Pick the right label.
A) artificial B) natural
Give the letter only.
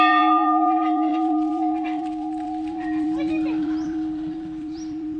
A